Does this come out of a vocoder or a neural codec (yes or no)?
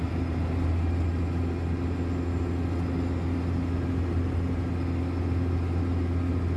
no